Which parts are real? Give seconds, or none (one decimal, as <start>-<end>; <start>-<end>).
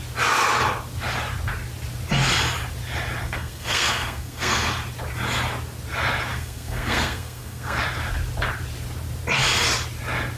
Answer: 0.0-3.2; 4.7-6.3; 7.8-10.4